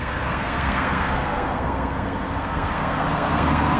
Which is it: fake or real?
fake